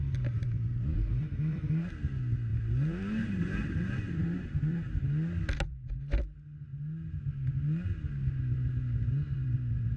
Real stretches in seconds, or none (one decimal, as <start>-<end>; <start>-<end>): 0.0-0.9; 1.9-2.5; 5.0-10.0